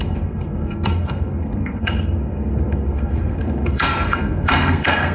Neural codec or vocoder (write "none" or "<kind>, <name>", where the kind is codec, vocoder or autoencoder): codec, SNAC